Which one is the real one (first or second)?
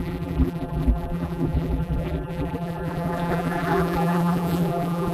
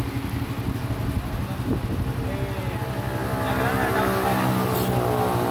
second